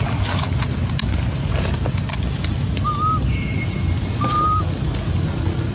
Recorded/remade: recorded